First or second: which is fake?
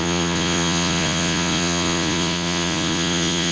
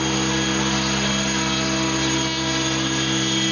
first